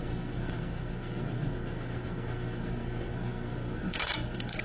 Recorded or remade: remade